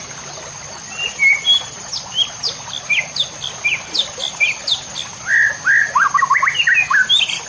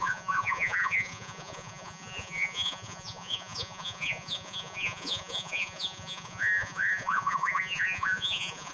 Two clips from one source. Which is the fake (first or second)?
second